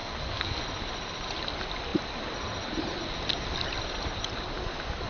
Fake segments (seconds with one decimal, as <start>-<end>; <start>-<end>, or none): 0.0-0.6

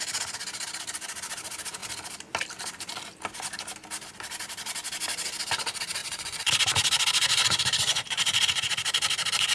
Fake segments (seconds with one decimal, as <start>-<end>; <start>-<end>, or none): 6.0-6.5; 7.2-8.7

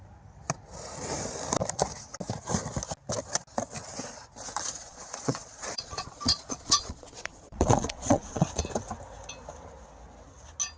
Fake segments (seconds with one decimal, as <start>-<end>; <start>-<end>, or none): 4.8-8.6

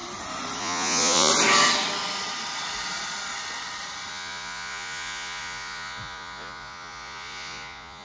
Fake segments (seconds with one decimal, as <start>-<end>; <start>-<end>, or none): 0.6-1.3; 4.1-8.0